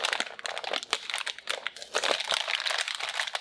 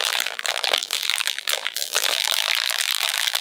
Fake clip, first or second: second